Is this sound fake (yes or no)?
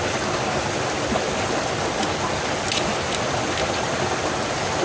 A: no